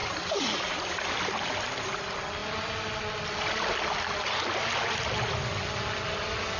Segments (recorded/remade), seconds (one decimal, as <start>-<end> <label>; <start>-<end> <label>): 0.0-0.6 remade; 0.6-6.6 recorded